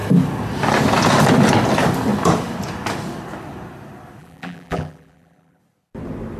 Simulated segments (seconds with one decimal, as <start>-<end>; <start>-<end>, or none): 4.2-5.6